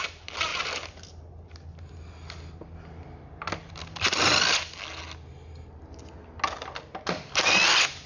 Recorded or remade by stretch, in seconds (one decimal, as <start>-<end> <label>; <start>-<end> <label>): 0.0-8.1 recorded